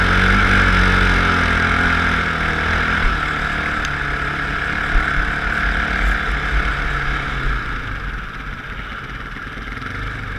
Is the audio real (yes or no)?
yes